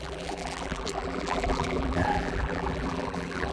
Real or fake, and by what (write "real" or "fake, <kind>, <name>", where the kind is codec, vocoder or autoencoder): fake, vocoder, BigVGAN v2